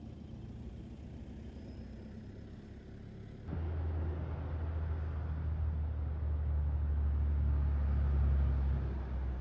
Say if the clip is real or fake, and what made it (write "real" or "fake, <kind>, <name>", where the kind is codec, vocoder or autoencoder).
real